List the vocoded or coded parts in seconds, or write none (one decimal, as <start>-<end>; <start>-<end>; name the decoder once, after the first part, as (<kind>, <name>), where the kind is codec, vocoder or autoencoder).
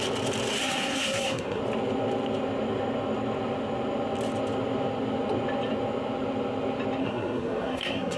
0.6-1.6 (codec, SNAC); 7.0-8.2